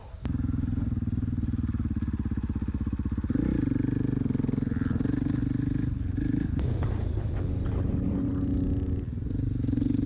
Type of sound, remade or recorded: recorded